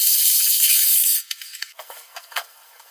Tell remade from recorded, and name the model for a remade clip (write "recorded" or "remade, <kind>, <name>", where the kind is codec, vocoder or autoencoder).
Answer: remade, codec, SNAC